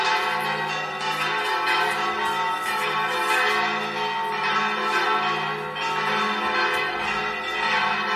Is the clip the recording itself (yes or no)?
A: yes